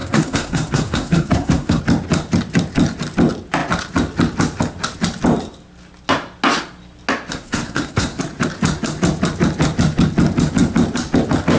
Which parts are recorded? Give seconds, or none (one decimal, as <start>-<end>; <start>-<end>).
1.8-7.3; 8.2-11.6